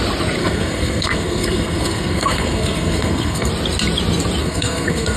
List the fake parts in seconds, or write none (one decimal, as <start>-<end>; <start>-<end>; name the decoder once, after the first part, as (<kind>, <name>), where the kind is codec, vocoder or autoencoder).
0.4-3.5 (codec, SNAC); 4.4-5.2